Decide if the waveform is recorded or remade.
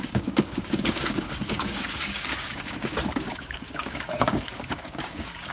remade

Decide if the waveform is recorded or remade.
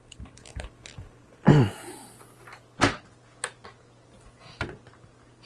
recorded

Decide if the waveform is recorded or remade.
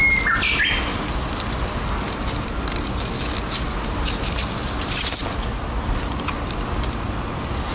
recorded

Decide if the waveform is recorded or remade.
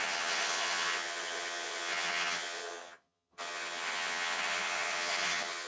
remade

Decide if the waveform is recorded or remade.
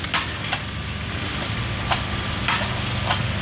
recorded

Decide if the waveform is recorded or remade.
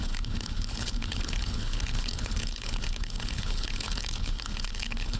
remade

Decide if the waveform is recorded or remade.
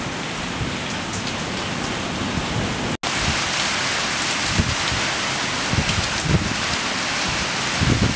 recorded